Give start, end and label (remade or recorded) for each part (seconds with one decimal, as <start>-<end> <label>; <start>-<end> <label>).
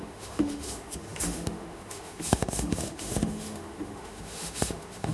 0.0-5.1 remade